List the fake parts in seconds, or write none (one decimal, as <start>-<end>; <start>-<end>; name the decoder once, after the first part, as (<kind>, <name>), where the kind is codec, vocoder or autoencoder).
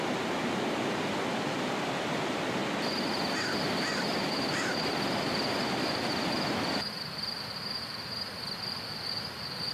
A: none